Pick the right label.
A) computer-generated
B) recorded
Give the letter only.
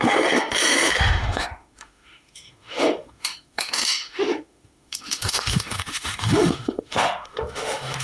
A